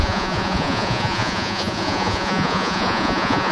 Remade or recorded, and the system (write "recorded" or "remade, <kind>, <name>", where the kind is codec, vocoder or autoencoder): remade, vocoder, Vocos